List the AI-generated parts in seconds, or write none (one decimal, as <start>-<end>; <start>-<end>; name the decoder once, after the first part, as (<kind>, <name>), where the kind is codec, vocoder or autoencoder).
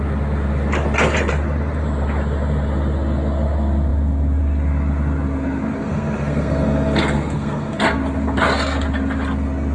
5.8-7.8 (codec, SNAC)